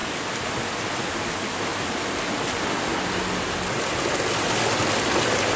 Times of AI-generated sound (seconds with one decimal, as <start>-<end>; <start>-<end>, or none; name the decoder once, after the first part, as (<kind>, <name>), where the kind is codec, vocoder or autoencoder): none